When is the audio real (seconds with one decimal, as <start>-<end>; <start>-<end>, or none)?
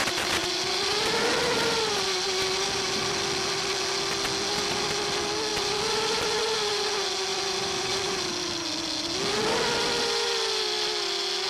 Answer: 0.0-5.5; 6.2-7.3; 7.9-11.5